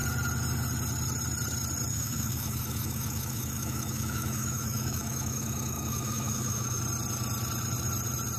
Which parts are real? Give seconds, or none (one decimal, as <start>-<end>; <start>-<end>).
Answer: 0.0-1.9; 6.8-8.4

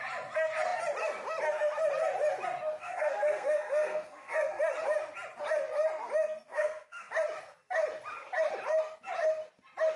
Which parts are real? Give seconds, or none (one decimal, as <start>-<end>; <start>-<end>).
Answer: 0.0-2.8; 4.6-6.5; 7.1-10.0

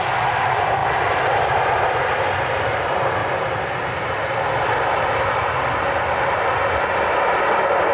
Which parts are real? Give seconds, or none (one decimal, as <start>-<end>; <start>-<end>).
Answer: 0.0-7.9

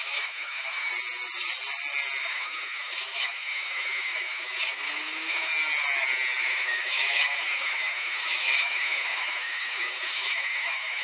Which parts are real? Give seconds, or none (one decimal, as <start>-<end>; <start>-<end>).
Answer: 0.9-2.2; 5.5-6.4

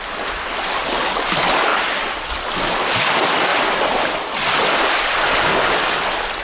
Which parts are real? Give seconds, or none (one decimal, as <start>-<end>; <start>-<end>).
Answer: 0.0-1.7; 2.3-3.5; 5.7-6.4

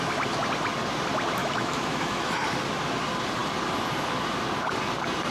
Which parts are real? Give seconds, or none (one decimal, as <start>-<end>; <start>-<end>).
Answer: 0.0-1.4; 2.3-5.3

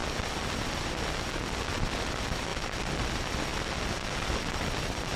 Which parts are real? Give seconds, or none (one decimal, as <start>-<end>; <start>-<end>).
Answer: 0.0-5.2

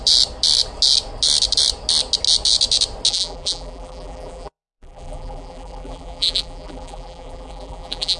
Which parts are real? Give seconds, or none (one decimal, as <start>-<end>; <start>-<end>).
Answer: 0.0-3.1